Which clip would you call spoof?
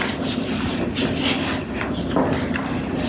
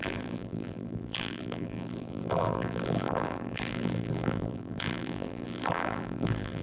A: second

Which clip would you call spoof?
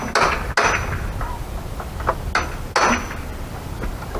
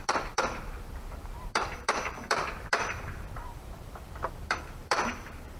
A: second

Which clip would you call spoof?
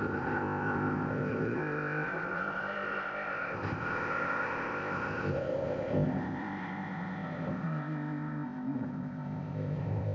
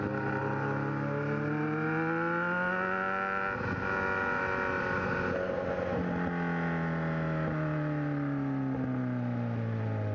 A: first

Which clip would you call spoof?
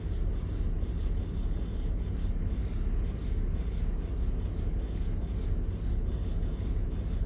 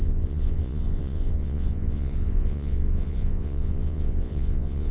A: second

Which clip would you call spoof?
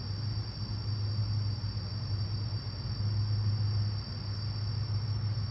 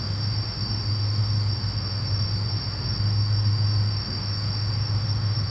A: second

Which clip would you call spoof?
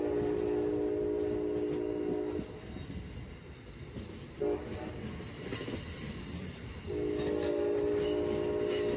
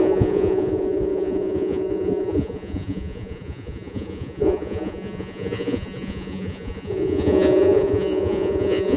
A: second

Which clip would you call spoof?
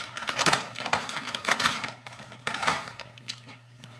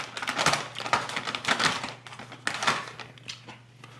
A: first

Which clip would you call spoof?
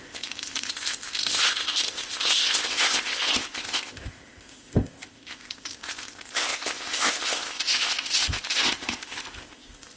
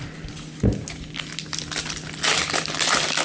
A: first